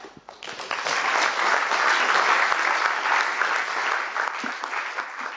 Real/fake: real